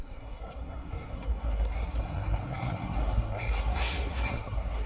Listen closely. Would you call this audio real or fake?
fake